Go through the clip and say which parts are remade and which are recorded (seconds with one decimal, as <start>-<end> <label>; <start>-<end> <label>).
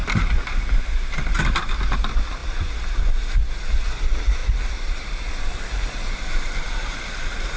0.0-1.1 remade; 1.1-4.4 recorded; 4.4-7.6 remade